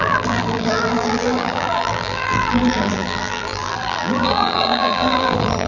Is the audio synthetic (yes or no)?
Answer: yes